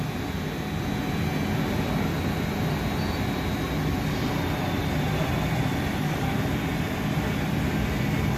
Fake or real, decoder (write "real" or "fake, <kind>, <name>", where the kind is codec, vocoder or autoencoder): real